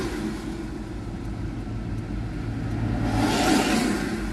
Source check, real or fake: real